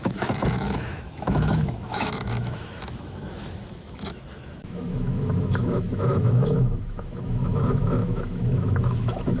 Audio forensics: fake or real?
fake